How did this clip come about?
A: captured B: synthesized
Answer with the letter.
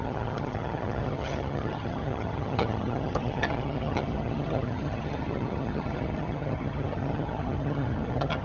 B